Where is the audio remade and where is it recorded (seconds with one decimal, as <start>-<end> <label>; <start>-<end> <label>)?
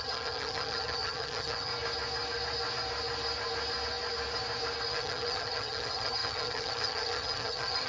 0.0-1.7 remade; 1.7-4.9 recorded; 4.9-7.9 remade